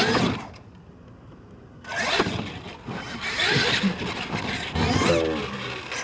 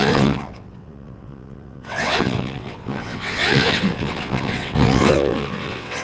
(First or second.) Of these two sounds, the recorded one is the first